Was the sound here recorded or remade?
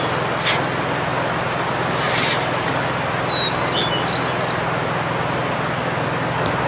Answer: recorded